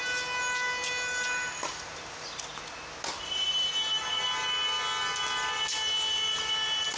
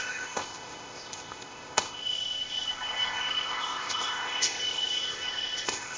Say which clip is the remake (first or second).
second